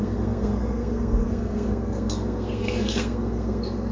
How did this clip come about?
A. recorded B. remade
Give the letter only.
B